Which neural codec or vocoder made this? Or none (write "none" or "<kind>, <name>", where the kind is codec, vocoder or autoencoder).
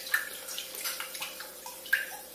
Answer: vocoder, BigVGAN v2